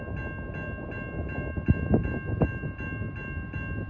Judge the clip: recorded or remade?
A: recorded